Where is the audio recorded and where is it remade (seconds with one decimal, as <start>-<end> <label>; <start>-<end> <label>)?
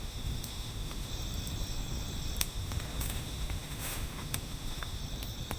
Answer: 0.0-1.1 remade; 1.1-2.4 recorded; 2.4-5.0 remade; 5.0-5.6 recorded